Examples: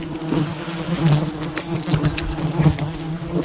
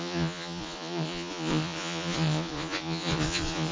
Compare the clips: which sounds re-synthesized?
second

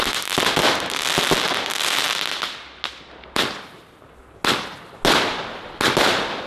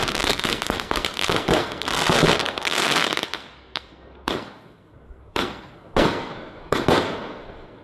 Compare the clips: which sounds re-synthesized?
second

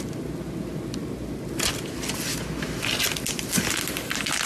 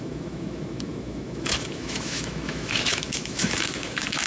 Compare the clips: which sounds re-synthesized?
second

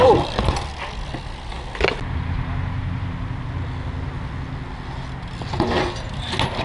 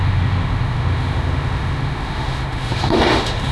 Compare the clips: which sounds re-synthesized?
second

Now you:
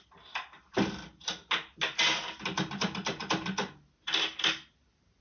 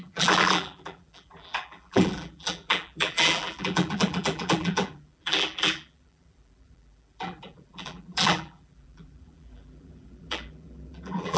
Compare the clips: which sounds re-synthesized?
second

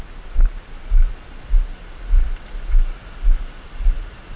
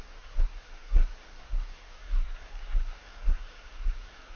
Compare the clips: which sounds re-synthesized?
second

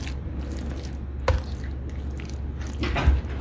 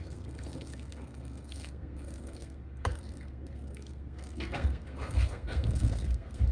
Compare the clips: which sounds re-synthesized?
second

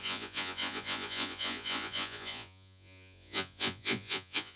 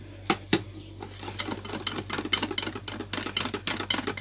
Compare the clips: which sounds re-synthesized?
first